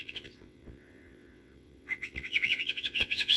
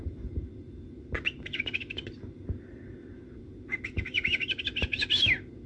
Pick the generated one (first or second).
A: first